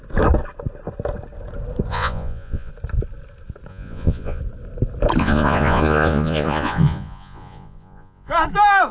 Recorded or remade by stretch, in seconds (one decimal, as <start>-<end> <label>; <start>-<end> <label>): 0.0-1.9 recorded; 1.9-2.7 remade; 2.7-3.7 recorded; 3.7-4.4 remade; 4.4-5.2 recorded; 5.2-8.3 remade; 8.3-8.9 recorded